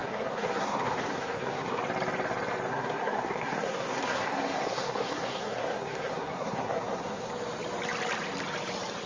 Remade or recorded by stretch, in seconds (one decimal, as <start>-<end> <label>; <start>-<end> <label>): 0.0-1.8 remade; 1.8-2.7 recorded; 2.7-7.3 remade; 7.3-9.1 recorded